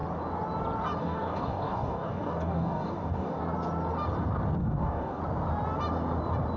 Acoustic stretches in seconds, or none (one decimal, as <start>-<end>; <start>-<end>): 0.0-1.0; 3.4-4.6; 5.2-6.6